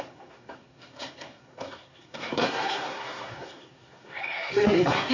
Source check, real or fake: fake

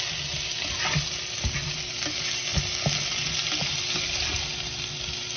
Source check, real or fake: real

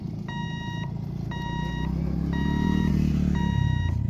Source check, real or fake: real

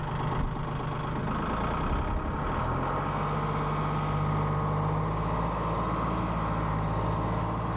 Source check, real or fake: real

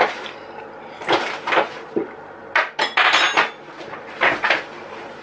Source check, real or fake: real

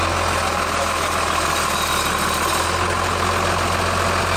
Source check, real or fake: real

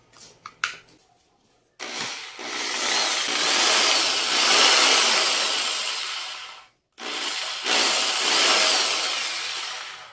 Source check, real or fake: real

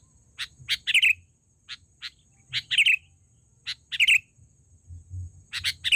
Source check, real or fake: real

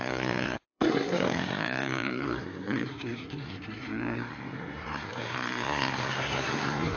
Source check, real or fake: fake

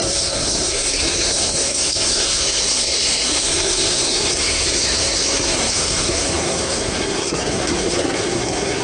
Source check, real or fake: fake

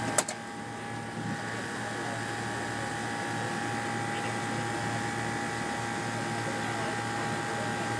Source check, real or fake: real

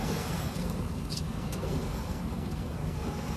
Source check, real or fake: fake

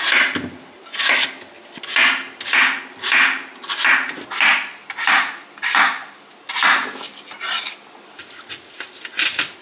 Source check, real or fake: real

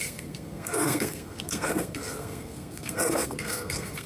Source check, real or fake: fake